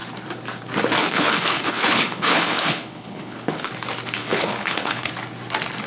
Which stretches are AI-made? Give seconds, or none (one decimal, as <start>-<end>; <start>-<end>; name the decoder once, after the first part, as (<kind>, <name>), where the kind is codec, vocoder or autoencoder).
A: 1.0-3.7 (codec, HILCodec); 4.2-5.1